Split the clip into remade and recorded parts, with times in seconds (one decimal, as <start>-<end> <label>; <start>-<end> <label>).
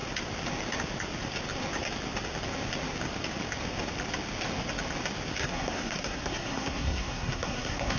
0.0-5.4 recorded; 5.4-8.0 remade